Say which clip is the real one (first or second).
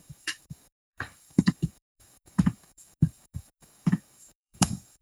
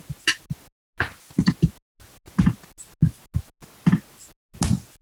second